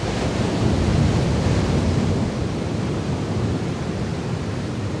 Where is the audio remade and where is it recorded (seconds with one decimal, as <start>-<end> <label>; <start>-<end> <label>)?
0.0-5.0 recorded